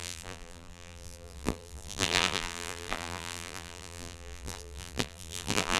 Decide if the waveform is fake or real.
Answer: fake